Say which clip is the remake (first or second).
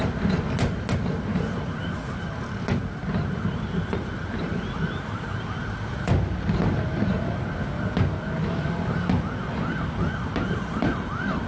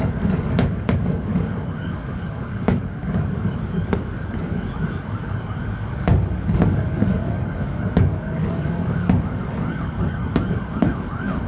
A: second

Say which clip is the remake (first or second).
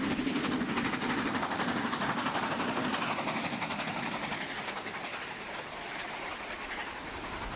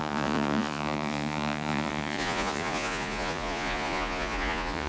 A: second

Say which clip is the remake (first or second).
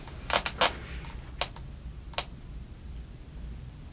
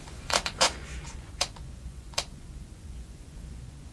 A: second